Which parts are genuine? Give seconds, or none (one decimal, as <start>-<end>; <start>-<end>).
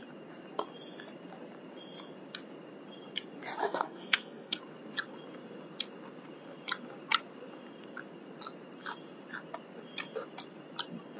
0.0-3.6; 4.6-11.2